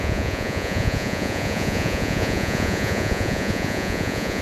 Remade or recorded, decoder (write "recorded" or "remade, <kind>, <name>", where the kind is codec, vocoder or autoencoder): remade, vocoder, Vocos